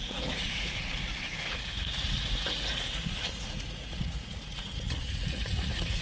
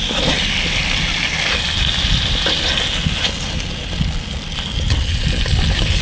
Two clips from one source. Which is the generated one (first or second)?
first